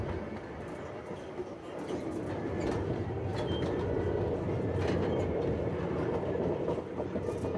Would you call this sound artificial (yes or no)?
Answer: no